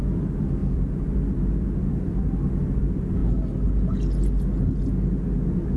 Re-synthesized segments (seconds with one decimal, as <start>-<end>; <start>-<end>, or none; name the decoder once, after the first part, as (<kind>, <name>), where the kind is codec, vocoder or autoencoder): 0.0-3.2 (vocoder, BigVGAN v2)